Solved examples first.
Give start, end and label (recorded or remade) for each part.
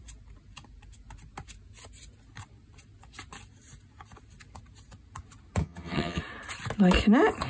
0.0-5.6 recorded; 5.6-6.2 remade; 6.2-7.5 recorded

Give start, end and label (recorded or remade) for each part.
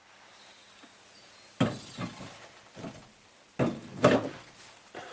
0.0-5.1 recorded